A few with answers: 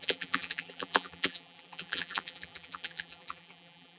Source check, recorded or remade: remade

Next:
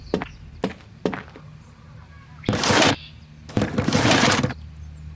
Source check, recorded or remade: recorded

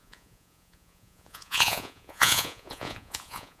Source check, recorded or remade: remade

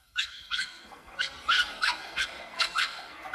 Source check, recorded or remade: remade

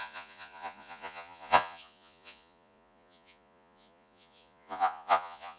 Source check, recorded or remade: remade